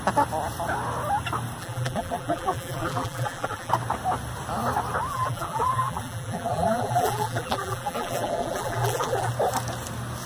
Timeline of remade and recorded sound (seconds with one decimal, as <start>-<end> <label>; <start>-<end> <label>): 0.0-1.6 recorded; 1.6-3.7 remade; 3.7-5.1 recorded; 5.1-9.3 remade; 9.3-10.3 recorded